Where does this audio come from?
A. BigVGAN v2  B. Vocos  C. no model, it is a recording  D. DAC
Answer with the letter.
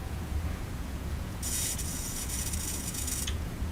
B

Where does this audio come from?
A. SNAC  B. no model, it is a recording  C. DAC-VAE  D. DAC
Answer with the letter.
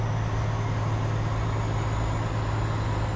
B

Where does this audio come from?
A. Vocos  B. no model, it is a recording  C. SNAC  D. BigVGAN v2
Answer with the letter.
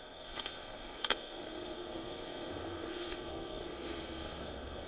C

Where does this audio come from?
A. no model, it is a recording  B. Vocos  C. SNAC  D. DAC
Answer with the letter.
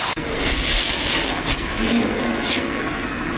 C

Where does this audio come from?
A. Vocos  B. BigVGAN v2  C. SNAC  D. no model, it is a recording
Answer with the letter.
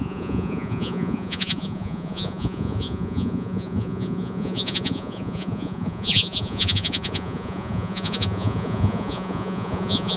A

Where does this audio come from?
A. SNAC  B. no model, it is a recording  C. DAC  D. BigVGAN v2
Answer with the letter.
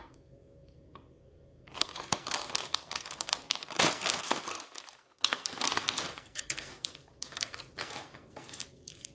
A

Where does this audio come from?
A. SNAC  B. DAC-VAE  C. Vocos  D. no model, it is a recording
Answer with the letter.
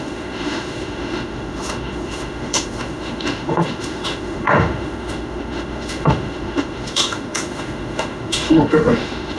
B